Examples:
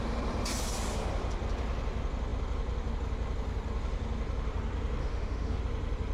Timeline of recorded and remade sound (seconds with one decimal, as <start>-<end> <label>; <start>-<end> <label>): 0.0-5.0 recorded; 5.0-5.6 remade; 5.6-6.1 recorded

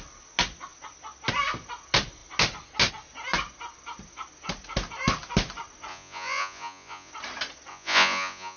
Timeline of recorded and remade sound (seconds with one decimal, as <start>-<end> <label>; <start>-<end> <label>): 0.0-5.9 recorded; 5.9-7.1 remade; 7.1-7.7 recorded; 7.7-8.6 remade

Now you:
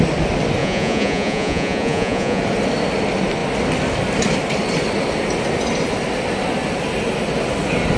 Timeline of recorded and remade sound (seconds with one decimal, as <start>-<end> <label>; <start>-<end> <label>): 0.0-0.6 recorded; 0.6-2.4 remade; 2.4-8.0 recorded

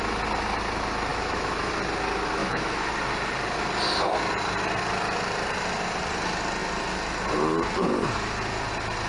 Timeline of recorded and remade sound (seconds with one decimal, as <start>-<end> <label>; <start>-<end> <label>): 0.0-1.1 recorded; 1.1-1.7 remade; 1.7-2.4 recorded; 2.4-2.9 remade; 2.9-9.1 recorded